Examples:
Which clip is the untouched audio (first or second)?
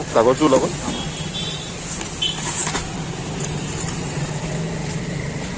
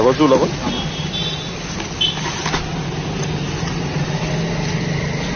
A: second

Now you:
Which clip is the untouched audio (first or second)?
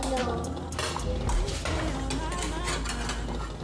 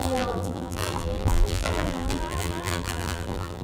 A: first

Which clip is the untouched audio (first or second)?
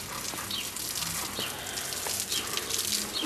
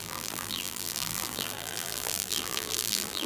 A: first